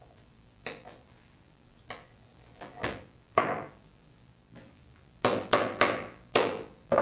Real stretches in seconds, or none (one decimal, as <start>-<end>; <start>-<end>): none

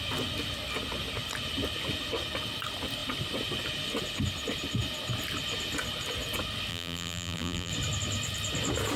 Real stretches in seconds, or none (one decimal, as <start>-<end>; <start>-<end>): 0.0-6.7; 7.7-9.0

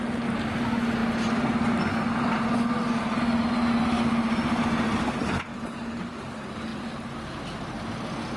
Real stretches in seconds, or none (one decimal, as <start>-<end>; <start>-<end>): 0.0-5.5; 6.0-6.7; 7.3-8.4